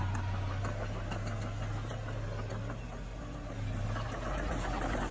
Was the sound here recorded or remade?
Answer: recorded